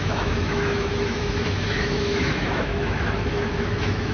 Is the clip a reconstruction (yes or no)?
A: yes